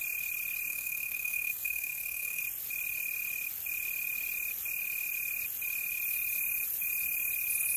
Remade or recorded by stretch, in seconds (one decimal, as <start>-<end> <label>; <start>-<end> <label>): 0.0-0.7 recorded; 0.7-2.4 remade; 2.4-7.8 recorded